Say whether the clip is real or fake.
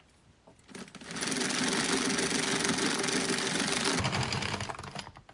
real